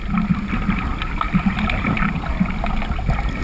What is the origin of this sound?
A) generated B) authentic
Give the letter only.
B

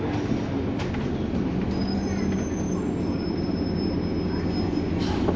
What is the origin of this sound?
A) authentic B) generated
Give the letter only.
A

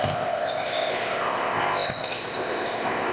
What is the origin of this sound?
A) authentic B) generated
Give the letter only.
B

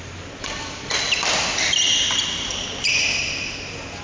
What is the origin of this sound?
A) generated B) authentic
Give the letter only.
B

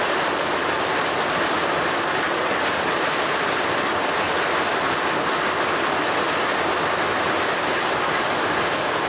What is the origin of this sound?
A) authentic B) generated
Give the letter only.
A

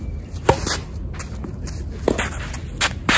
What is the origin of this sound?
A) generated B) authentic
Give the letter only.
B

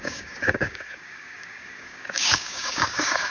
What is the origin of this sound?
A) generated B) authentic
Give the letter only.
A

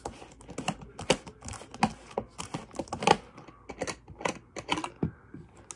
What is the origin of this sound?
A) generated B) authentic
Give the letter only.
B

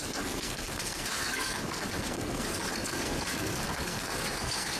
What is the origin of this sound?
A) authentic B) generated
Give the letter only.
B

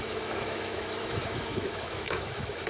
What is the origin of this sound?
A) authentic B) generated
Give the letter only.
B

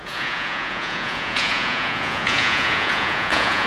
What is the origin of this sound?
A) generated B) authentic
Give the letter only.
A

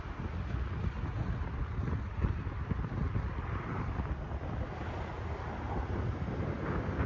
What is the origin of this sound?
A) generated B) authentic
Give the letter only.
B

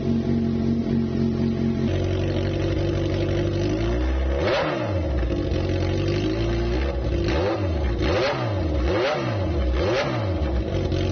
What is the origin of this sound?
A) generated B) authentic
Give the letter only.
B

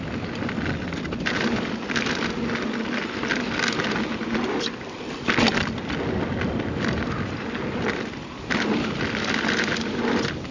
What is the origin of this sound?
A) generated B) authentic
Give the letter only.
B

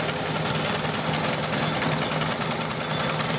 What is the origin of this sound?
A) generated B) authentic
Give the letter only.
B